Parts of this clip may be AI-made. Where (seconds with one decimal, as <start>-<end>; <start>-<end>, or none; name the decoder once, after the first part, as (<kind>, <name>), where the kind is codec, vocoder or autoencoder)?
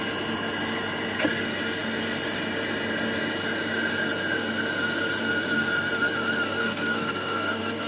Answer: 6.6-7.9 (codec, SNAC)